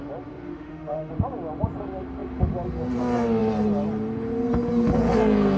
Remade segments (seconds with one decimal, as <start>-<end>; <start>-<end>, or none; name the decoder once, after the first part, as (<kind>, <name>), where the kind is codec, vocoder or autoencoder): 0.5-1.1 (autoencoder, DAC-VAE)